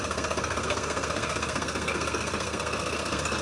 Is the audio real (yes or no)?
no